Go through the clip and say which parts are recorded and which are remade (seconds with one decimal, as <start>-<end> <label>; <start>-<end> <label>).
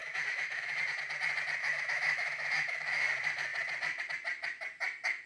0.0-0.8 remade; 0.8-1.6 recorded; 1.6-3.0 remade; 3.0-5.3 recorded